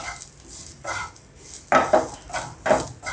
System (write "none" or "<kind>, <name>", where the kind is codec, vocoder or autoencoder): none